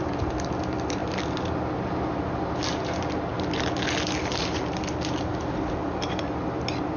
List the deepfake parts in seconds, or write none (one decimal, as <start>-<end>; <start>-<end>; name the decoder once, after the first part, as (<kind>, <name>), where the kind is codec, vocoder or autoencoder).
none